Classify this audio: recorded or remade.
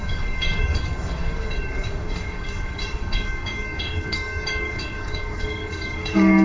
remade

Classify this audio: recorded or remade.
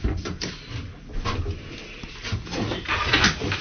recorded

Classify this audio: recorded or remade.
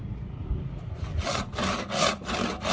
recorded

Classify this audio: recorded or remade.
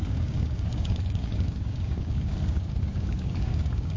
remade